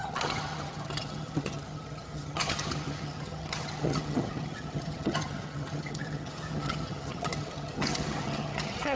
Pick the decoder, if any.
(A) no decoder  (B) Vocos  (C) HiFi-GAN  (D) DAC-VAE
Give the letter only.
C